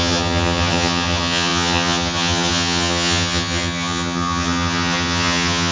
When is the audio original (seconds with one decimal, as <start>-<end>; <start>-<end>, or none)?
none